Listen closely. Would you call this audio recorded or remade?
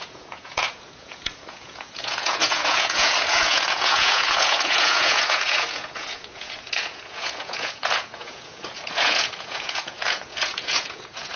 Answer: remade